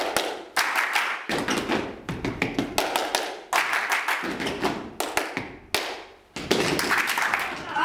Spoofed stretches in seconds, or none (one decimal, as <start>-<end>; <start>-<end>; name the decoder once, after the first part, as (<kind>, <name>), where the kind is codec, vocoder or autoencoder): none